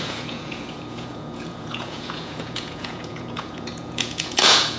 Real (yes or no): no